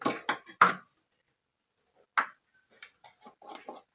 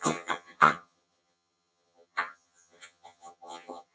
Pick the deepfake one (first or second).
second